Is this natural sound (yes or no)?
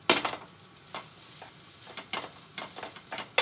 yes